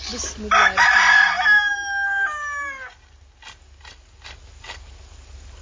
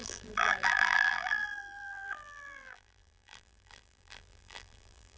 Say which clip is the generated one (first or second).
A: second